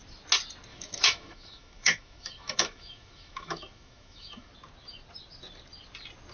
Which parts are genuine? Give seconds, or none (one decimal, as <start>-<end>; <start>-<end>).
0.0-0.7; 4.5-6.3

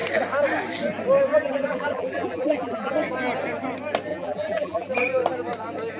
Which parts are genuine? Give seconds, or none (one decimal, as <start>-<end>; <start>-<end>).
0.0-1.3; 2.9-4.1; 4.9-6.0